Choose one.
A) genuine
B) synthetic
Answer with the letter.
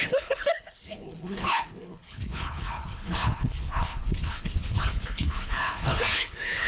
B